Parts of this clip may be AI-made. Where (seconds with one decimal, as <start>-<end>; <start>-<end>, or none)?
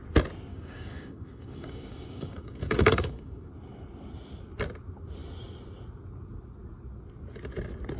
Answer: 0.5-3.5